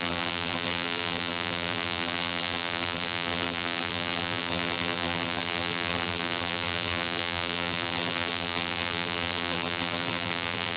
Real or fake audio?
fake